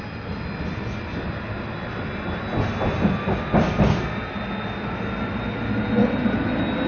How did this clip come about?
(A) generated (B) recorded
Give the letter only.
B